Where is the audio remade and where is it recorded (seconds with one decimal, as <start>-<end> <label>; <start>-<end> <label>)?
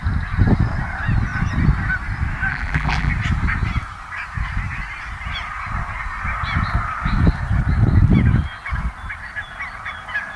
0.0-2.5 recorded; 2.5-3.1 remade; 3.1-10.4 recorded